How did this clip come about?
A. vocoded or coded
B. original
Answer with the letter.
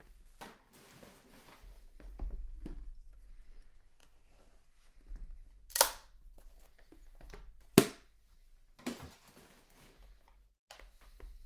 B